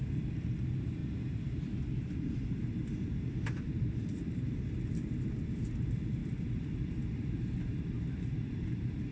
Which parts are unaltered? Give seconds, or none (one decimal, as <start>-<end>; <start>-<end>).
1.0-2.9; 6.2-7.6